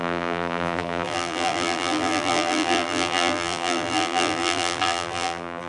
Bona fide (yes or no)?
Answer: no